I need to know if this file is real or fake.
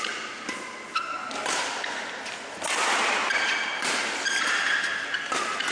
real